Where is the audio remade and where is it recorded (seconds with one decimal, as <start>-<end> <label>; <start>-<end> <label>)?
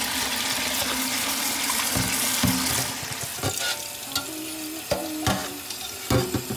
0.0-6.6 recorded